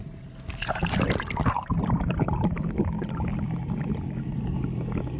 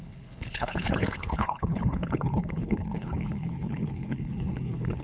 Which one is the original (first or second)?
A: first